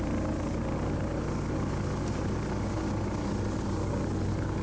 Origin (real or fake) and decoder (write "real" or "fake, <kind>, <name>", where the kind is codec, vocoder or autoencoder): real